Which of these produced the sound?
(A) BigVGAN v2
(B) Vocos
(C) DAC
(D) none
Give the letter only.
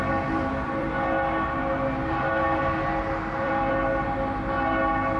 A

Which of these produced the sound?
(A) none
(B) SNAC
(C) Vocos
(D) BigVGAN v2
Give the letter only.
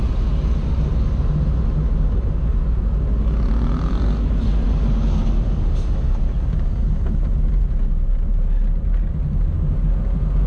A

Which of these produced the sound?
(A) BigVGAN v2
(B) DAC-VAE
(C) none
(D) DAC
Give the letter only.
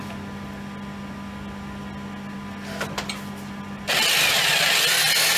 C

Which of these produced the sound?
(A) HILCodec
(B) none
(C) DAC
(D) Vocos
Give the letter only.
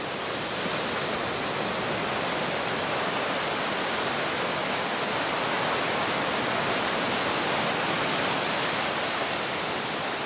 B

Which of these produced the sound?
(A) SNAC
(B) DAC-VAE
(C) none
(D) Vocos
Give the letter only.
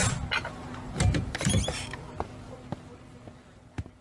C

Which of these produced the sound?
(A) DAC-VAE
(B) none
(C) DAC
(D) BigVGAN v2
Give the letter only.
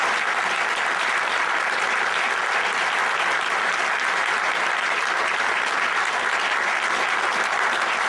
B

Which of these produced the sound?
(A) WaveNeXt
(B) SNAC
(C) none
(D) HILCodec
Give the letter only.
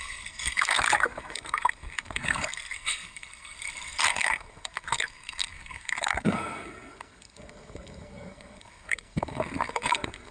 B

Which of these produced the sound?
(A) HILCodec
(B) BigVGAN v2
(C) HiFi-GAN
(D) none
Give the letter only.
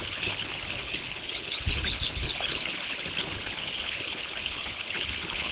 A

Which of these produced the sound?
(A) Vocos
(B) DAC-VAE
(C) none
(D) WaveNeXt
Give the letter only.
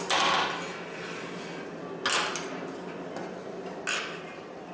C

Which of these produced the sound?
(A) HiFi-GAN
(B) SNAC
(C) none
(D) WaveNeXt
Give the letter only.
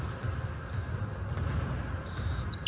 C